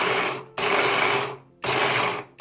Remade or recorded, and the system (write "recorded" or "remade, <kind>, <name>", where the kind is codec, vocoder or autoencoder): recorded